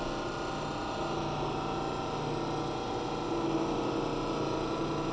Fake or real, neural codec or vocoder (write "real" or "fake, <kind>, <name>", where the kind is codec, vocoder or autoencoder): real